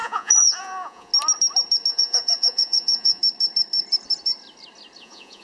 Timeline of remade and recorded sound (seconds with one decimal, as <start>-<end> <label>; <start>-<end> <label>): 0.0-1.1 remade; 1.1-1.9 recorded; 1.9-3.2 remade; 3.2-5.0 recorded; 5.0-5.4 remade